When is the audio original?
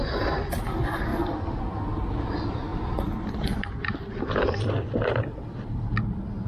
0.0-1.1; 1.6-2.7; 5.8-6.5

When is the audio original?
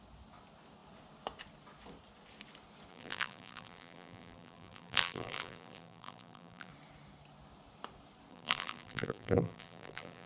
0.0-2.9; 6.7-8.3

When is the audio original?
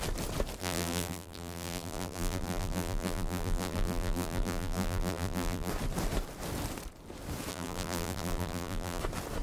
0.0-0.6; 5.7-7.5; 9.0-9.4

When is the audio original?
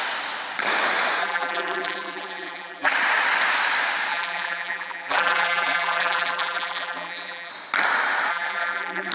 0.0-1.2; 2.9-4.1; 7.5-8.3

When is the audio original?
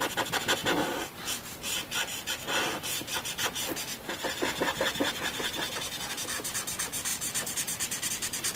0.0-7.1; 8.1-8.6